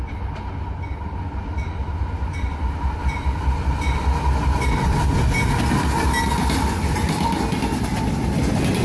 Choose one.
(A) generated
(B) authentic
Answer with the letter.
B